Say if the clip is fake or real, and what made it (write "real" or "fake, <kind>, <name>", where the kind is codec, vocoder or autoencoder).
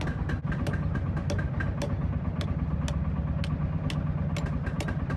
real